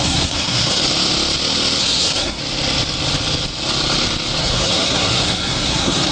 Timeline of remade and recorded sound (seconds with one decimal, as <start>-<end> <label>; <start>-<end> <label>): 0.0-0.8 remade; 0.8-1.8 recorded; 1.8-2.4 remade; 2.4-4.4 recorded; 4.4-6.1 remade